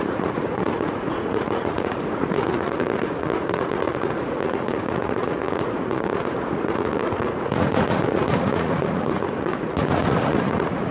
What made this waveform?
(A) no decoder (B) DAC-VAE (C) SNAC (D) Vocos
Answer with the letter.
D